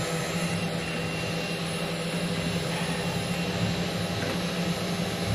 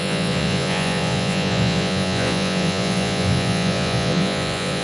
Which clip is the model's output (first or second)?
second